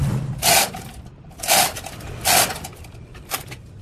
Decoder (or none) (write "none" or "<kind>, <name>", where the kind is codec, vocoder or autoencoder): none